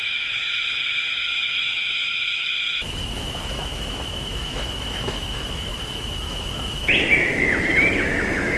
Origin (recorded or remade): remade